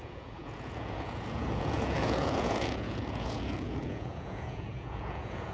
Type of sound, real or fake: fake